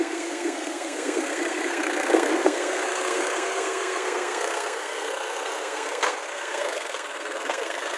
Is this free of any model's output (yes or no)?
no